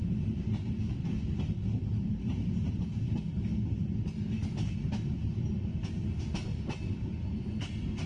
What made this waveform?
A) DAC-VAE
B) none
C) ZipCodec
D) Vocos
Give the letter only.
B